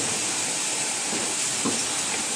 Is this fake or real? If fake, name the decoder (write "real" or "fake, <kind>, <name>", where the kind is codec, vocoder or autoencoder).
fake, vocoder, BigVGAN v2